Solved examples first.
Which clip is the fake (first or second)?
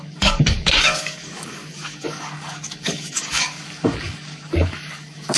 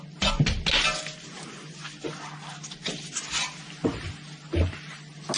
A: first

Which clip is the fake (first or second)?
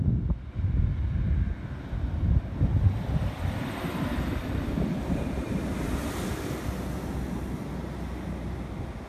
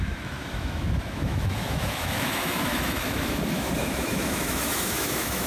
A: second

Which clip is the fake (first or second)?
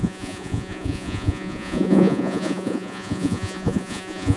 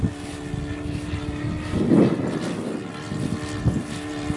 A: first